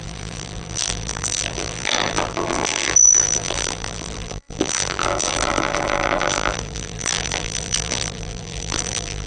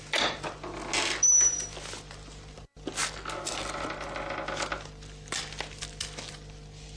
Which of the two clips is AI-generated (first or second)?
first